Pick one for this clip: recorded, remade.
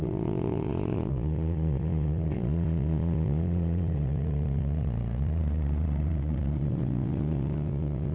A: remade